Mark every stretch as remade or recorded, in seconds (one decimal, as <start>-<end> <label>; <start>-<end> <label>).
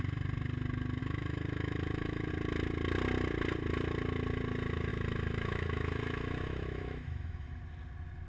0.0-1.0 recorded; 1.0-2.3 remade; 2.3-4.9 recorded; 4.9-7.6 remade; 7.6-8.3 recorded